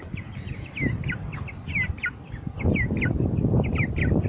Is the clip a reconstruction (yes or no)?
no